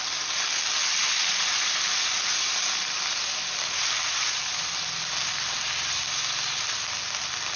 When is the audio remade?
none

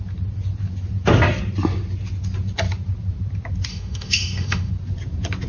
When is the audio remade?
3.7-4.7 (autoencoder, DAC-VAE)